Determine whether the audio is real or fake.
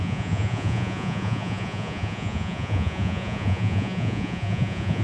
fake